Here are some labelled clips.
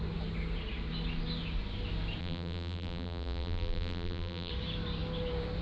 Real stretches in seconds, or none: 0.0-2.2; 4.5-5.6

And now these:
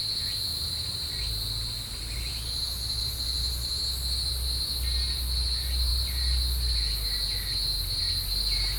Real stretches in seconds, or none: 0.0-0.5; 1.1-8.8

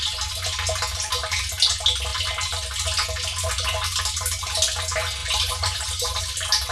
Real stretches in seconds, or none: 0.0-5.2; 6.2-6.7

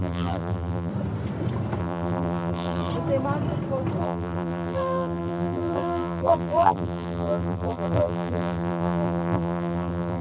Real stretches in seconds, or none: 0.9-1.8; 2.9-4.0

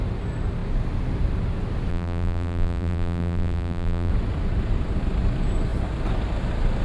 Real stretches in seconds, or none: 0.0-1.9; 4.1-6.8

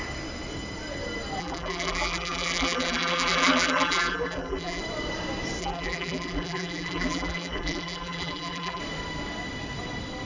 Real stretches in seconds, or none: 0.0-1.4; 4.8-5.6; 8.8-10.3

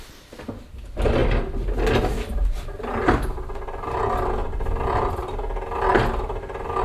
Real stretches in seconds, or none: 0.0-4.4; 5.4-6.8

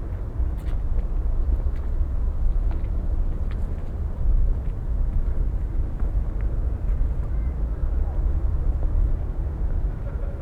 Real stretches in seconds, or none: 0.0-7.8; 9.8-10.4